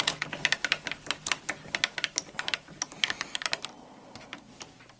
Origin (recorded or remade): recorded